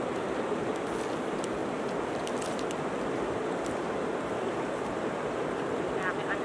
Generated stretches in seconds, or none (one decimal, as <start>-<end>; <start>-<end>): none